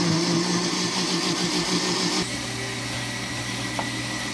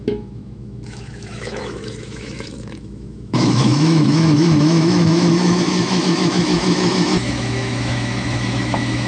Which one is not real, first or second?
second